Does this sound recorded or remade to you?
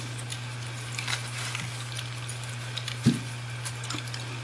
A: recorded